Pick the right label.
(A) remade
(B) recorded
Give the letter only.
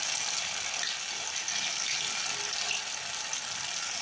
B